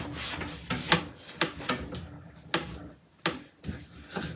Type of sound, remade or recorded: recorded